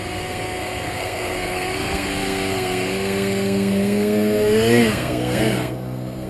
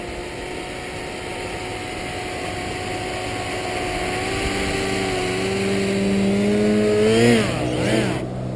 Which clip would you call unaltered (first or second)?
second